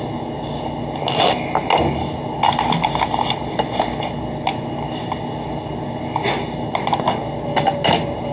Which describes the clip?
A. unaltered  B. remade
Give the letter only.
A